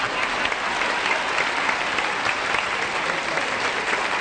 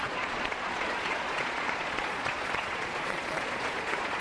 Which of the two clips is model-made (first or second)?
second